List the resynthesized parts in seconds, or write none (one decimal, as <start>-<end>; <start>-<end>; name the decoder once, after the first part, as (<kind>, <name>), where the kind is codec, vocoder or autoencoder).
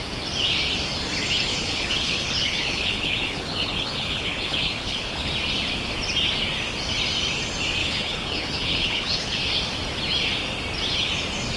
1.5-5.3 (codec, HILCodec); 7.8-9.4